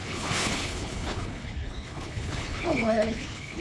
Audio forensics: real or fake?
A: fake